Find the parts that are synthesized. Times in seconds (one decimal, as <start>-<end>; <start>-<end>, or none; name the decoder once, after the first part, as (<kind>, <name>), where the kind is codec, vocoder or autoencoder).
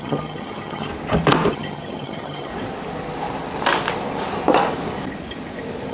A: 0.0-0.9 (vocoder, HiFi-GAN); 1.5-2.5